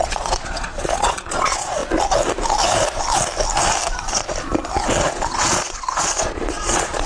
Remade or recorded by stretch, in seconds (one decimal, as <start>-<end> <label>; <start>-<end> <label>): 0.0-1.8 remade; 1.8-5.1 recorded; 5.1-7.1 remade